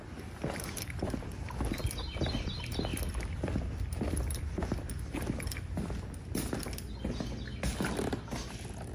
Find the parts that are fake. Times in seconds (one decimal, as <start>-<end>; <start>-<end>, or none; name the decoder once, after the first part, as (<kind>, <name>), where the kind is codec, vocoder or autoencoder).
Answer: 2.9-4.4 (vocoder, BigVGAN v2)

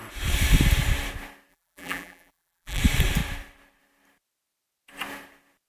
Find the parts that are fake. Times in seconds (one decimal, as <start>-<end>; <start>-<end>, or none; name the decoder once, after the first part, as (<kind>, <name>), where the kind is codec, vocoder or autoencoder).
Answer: 1.5-2.8 (vocoder, BigVGAN v2)

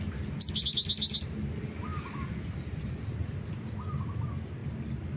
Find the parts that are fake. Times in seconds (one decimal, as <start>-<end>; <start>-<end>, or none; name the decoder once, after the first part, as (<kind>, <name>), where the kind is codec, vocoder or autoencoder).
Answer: 1.9-3.7 (vocoder, BigVGAN v2)

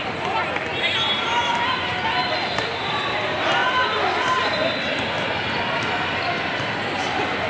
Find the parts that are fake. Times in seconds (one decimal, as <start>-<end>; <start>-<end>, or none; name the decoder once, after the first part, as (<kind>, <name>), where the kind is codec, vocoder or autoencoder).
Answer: 2.2-2.9 (vocoder, BigVGAN v2); 3.6-5.6

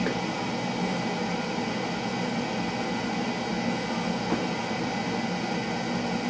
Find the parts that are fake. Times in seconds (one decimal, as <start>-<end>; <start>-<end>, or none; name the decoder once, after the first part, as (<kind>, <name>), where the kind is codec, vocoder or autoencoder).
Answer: none